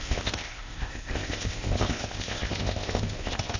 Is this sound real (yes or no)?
no